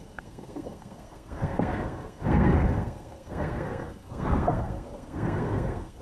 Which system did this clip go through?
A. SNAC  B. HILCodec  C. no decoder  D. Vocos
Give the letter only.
A